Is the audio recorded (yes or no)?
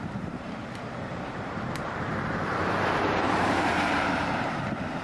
no